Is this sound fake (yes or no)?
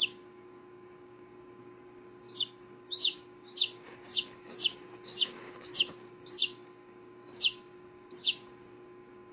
yes